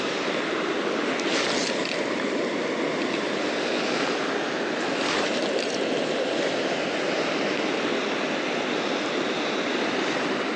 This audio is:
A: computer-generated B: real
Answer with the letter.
B